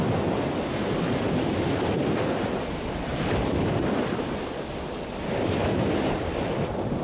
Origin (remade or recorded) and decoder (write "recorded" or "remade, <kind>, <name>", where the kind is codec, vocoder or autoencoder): recorded